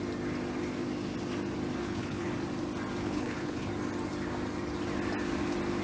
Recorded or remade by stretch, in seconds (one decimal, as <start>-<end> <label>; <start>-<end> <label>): 0.0-1.8 recorded; 1.8-2.3 remade; 2.3-3.0 recorded; 3.0-3.7 remade; 3.7-5.8 recorded

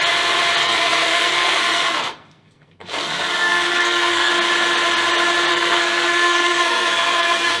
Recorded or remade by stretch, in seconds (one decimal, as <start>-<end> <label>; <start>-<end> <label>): 0.0-0.6 recorded; 0.6-4.3 remade; 4.3-5.5 recorded; 5.5-7.6 remade

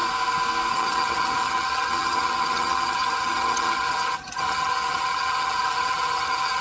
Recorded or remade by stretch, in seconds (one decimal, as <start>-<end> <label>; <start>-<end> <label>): 0.0-0.7 recorded; 0.7-6.6 remade